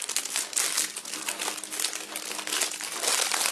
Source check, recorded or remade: recorded